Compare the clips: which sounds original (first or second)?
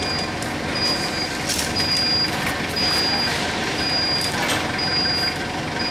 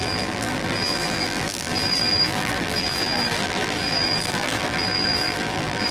first